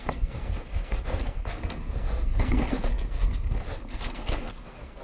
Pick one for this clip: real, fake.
fake